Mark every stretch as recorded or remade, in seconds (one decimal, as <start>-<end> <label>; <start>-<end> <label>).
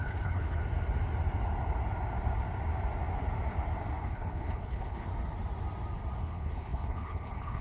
0.0-0.6 remade; 0.6-4.0 recorded; 4.0-5.1 remade; 5.1-6.2 recorded; 6.2-7.6 remade